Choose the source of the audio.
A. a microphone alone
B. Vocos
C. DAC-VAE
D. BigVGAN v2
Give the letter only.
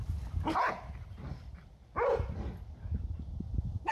A